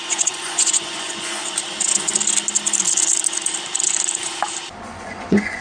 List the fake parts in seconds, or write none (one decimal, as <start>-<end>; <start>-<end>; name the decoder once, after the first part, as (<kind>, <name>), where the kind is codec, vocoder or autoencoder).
0.0-1.4 (vocoder, Vocos); 4.8-5.6